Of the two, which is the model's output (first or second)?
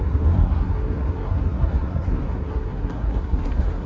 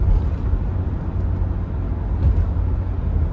first